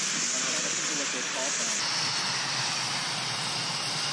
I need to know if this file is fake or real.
real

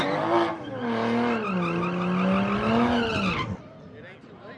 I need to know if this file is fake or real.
real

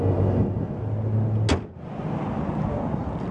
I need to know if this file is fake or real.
real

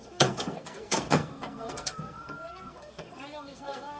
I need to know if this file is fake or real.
fake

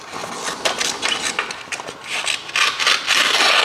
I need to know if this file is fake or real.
real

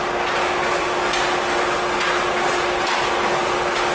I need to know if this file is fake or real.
real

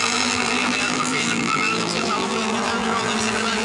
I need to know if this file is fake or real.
fake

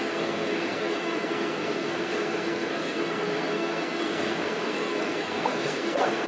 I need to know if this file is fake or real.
fake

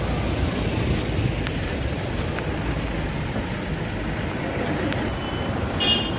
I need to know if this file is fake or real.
real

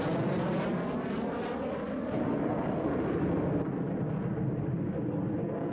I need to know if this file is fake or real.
real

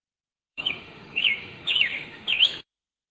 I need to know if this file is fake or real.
fake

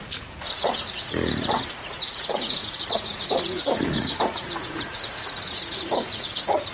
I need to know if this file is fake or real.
fake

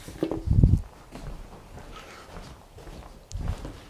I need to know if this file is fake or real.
real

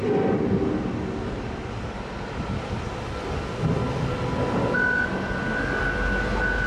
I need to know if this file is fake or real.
real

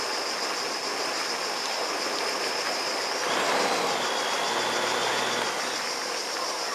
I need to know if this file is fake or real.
real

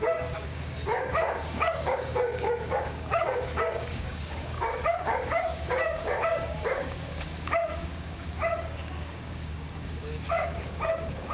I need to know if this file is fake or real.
fake